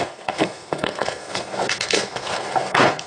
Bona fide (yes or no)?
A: no